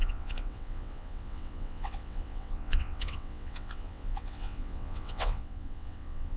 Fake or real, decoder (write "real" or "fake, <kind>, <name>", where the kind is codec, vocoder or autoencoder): fake, vocoder, WaveNeXt